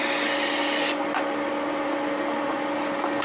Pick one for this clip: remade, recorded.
recorded